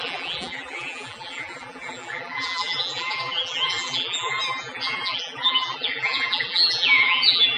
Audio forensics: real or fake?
fake